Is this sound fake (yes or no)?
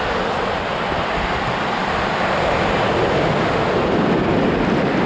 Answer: no